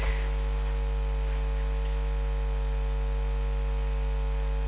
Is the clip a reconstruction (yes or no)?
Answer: no